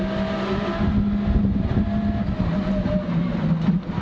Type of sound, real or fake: real